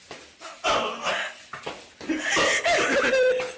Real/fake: real